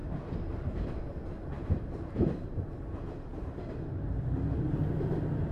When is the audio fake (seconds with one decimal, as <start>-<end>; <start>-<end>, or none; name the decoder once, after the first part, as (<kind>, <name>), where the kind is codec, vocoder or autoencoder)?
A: 0.0-0.9 (vocoder, BigVGAN v2); 1.4-3.7